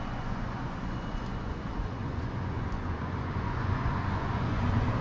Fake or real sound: fake